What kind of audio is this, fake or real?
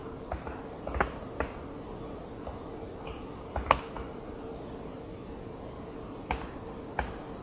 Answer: real